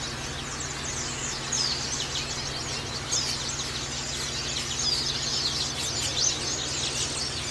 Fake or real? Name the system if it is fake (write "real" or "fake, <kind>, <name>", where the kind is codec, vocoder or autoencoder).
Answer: real